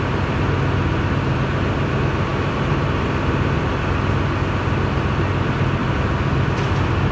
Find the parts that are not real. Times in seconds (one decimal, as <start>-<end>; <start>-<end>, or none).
5.8-7.1